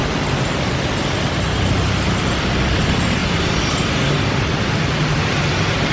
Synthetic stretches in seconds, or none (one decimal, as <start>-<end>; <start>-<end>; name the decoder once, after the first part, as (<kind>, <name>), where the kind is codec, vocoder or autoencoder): none